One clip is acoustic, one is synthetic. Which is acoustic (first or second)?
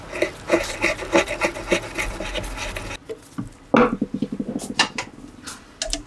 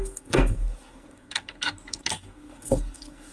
first